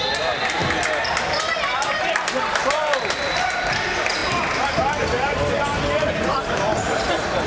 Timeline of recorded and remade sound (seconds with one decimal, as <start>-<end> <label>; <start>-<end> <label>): 0.0-2.6 remade; 2.6-3.3 recorded; 3.3-4.2 remade; 4.2-4.8 recorded; 4.8-7.5 remade